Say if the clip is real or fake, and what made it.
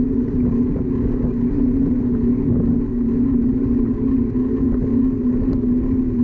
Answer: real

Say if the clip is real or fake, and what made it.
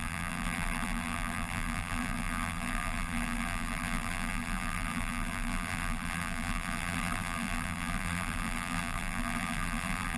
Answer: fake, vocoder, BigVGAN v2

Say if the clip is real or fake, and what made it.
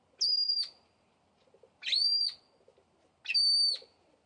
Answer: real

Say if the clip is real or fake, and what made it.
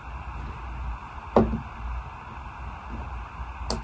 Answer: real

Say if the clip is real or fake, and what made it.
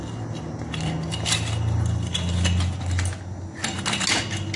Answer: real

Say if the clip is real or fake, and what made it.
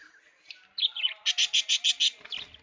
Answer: real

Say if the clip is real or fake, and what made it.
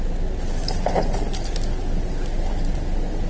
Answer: real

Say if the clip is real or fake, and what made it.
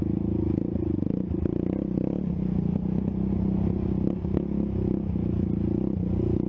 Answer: real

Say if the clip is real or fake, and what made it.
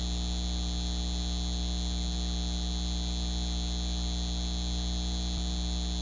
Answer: real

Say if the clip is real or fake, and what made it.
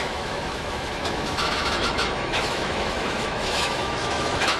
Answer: fake, autoencoder, DAC-VAE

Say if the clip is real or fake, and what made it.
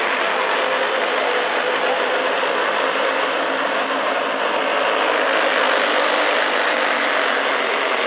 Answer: real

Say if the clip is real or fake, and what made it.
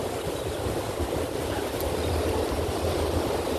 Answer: real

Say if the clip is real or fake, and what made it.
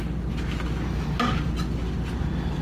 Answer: real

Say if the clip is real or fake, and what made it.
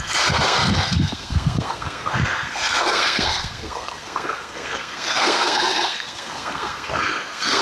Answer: fake, codec, SNAC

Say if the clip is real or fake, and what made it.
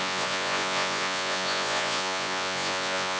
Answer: fake, vocoder, Vocos